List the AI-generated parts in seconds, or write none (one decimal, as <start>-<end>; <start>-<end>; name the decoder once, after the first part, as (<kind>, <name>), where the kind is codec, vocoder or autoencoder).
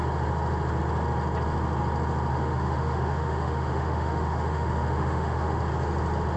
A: 2.3-5.6 (autoencoder, DAC-VAE)